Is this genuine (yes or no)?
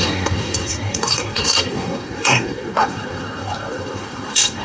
no